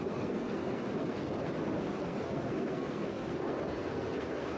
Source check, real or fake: fake